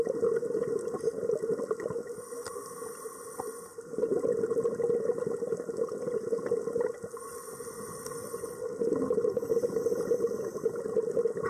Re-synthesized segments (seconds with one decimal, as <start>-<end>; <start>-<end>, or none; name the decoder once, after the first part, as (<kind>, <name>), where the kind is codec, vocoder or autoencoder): none